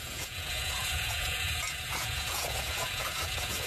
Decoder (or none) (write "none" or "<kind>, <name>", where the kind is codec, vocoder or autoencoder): vocoder, Vocos